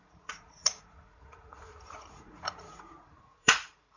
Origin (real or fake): fake